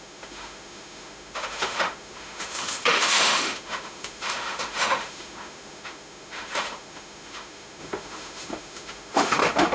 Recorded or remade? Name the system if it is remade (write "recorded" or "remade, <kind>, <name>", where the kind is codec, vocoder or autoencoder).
remade, autoencoder, DAC-VAE